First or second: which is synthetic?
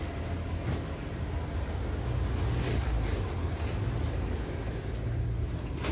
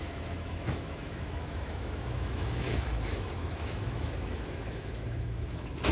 second